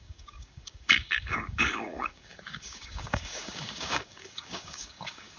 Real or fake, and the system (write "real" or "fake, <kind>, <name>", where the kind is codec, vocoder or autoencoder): fake, codec, DAC